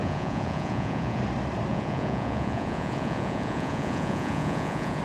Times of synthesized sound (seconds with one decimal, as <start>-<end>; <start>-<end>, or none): 0.0-1.2; 1.7-5.0